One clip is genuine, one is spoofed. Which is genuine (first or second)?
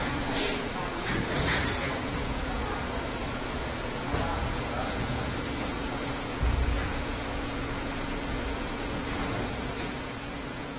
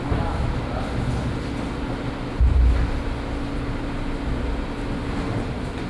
second